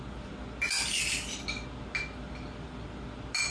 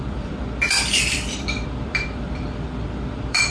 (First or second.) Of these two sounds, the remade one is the second